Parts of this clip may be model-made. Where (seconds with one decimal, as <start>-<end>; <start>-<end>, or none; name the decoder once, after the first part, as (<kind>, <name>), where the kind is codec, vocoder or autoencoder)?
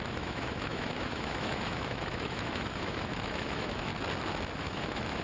0.0-3.9 (autoencoder, DAC-VAE); 4.6-5.2